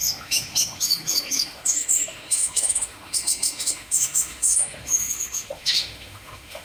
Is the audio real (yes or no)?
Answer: no